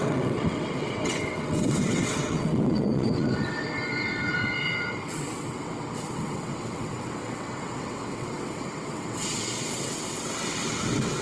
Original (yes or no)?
no